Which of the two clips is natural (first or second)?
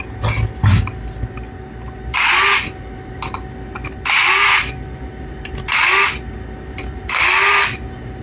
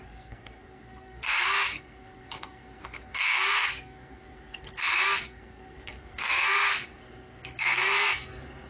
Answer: first